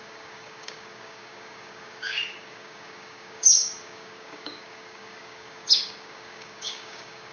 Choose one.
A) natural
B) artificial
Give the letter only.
B